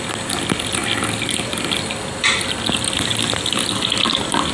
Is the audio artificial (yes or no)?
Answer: no